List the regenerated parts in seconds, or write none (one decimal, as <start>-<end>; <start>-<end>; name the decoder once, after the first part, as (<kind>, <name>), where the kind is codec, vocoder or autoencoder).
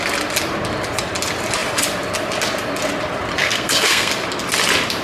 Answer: 3.4-4.1 (codec, SNAC)